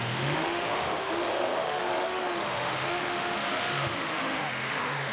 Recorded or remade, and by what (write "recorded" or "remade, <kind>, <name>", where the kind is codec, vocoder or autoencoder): remade, autoencoder, DAC-VAE